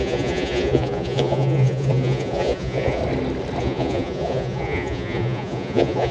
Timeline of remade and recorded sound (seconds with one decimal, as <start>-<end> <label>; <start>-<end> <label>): 0.0-3.0 remade; 3.0-3.6 recorded; 3.6-6.1 remade